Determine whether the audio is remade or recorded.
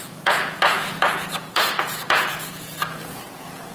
remade